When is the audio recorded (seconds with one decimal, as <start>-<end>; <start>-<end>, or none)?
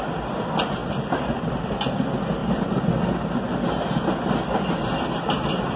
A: 0.0-5.8